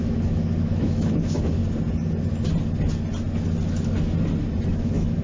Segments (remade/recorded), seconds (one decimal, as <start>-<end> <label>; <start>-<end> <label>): 0.0-1.6 remade; 1.6-4.7 recorded; 4.7-5.2 remade